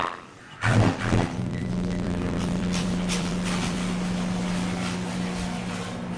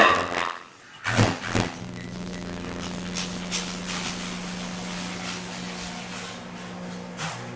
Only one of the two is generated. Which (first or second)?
first